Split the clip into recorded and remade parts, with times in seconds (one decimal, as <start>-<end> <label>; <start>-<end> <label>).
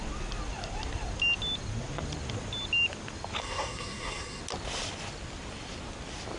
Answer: 0.0-3.4 recorded; 3.4-4.4 remade; 4.4-6.4 recorded